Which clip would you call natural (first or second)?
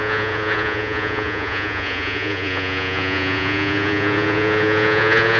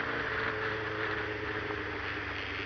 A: second